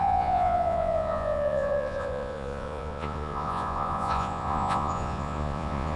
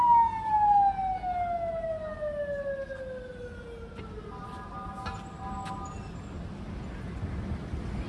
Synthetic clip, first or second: first